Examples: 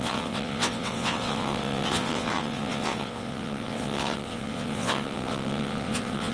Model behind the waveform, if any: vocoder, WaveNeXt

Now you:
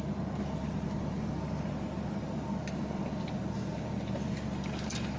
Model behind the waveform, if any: none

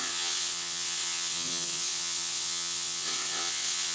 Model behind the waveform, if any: vocoder, WaveNeXt